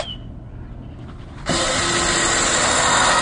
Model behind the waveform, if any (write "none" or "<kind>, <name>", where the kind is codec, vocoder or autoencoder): none